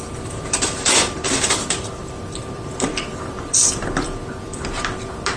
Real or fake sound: fake